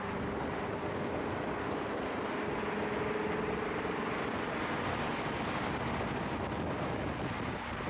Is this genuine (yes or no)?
yes